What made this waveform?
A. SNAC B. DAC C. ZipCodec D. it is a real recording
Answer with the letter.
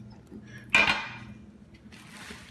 D